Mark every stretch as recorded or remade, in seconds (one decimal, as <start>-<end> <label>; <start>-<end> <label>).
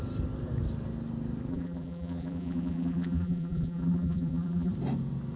0.0-1.5 recorded; 1.5-4.7 remade; 4.7-5.4 recorded